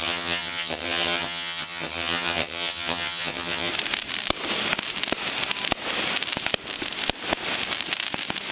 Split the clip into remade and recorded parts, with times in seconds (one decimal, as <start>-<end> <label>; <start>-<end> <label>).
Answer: 0.0-3.7 remade; 3.7-8.5 recorded